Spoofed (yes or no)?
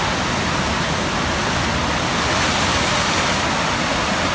no